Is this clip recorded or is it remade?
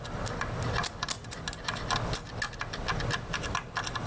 recorded